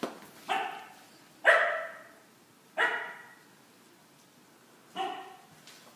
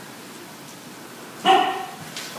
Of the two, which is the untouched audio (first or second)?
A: first